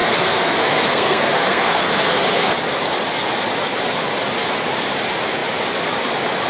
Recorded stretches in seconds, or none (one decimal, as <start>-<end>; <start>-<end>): 2.5-6.5